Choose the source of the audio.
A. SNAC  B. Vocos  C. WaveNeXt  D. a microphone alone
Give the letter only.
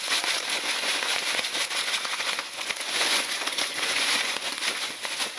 B